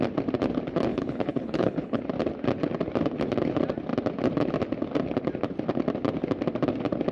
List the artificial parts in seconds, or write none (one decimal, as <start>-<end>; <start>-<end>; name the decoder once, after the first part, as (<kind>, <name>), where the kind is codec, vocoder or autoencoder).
0.9-2.0 (codec, HILCodec)